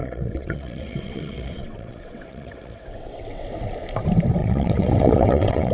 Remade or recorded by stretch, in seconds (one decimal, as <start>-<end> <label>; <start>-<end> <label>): 0.0-3.4 remade; 3.4-4.4 recorded; 4.4-5.7 remade